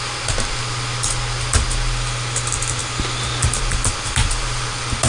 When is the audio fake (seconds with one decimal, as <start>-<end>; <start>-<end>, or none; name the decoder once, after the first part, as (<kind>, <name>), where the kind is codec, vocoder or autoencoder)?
none